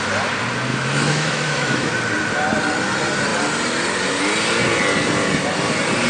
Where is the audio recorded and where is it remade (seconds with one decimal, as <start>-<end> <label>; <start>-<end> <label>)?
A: 0.0-0.7 recorded; 0.7-1.9 remade; 1.9-6.1 recorded